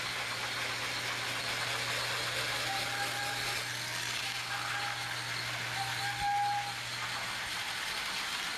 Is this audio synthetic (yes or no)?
no